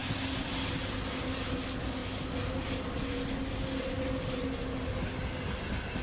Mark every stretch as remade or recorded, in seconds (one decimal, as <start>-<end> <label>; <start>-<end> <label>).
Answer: 0.0-6.0 recorded